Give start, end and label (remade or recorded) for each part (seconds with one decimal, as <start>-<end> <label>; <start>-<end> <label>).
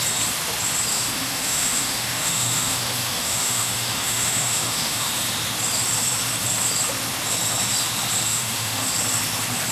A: 0.0-0.9 recorded; 0.9-5.1 remade; 5.1-8.3 recorded; 8.3-8.9 remade; 8.9-9.7 recorded